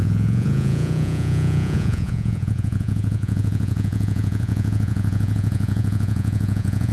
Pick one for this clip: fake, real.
fake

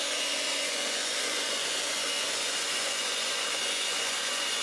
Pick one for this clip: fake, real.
fake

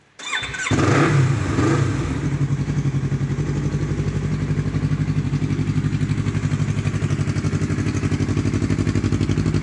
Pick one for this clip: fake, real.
real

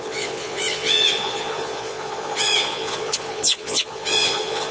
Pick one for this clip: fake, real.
fake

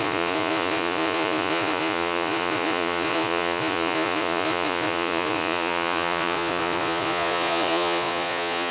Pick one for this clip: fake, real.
fake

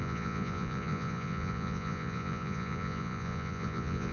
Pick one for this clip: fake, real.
fake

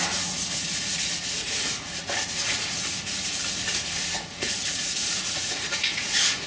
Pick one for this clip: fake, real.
fake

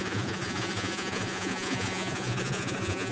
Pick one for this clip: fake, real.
fake